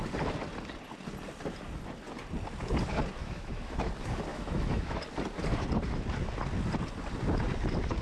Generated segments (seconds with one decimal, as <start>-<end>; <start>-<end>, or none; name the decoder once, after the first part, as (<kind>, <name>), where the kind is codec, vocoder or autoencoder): 3.2-3.9 (autoencoder, DAC-VAE); 4.3-5.0